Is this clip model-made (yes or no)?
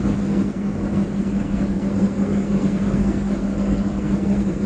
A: yes